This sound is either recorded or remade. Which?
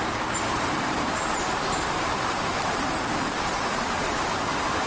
remade